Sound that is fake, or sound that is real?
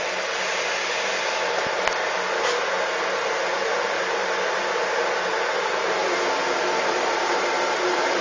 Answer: real